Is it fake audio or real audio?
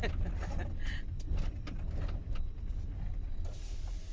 real